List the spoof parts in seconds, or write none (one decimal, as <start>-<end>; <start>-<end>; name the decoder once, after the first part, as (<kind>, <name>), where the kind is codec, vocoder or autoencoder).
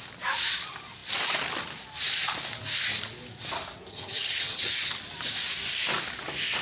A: 3.9-4.6 (vocoder, HiFi-GAN)